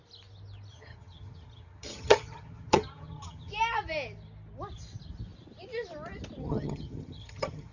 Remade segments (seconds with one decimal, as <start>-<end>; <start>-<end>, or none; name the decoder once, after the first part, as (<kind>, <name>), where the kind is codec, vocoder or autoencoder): 0.7-3.5 (vocoder, HiFi-GAN); 6.4-7.7